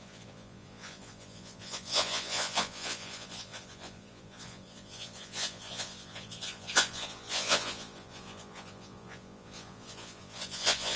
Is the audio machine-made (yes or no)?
yes